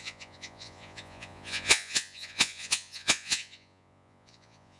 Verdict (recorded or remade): remade